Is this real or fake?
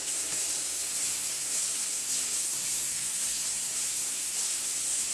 fake